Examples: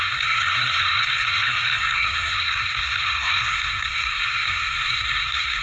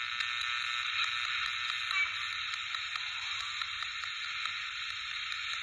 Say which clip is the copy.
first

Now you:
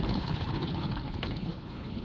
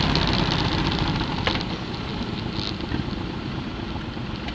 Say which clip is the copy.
first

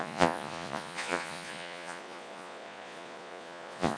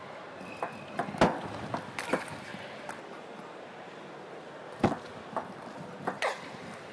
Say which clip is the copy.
first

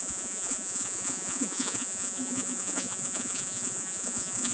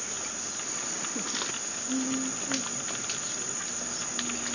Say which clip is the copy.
first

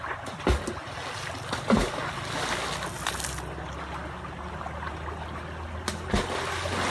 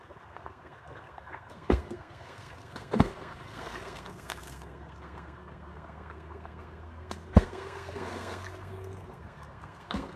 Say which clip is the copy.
second